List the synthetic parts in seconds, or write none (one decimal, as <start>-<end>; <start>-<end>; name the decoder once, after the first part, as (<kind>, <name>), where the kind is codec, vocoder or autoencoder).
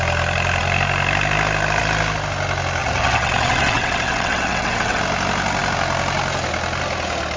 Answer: 2.8-5.0 (vocoder, WaveNeXt)